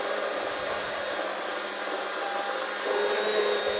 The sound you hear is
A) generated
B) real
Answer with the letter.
B